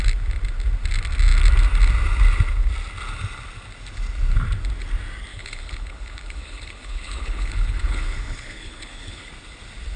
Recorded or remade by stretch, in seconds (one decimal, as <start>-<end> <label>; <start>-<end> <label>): 0.0-5.3 recorded; 5.3-9.3 remade; 9.3-10.0 recorded